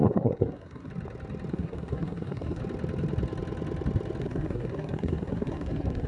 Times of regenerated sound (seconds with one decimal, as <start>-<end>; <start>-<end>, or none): 0.0-0.9; 1.5-2.6; 4.2-6.1